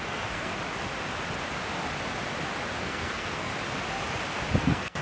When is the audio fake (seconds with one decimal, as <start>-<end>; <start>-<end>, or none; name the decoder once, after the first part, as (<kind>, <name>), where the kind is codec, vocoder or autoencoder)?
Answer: 0.0-0.5 (codec, SNAC); 2.8-3.5; 4.6-5.0